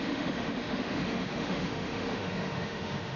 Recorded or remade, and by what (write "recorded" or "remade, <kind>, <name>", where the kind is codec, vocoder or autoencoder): remade, autoencoder, DAC-VAE